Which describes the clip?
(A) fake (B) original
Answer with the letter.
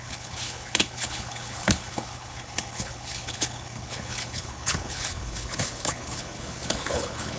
A